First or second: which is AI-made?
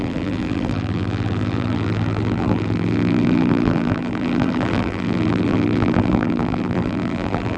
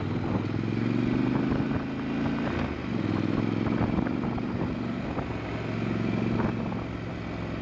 first